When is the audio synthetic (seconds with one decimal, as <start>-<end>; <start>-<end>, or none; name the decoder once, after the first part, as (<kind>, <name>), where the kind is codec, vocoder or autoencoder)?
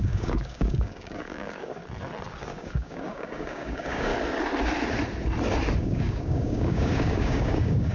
0.0-1.8 (codec, DAC); 2.4-4.1; 5.8-7.9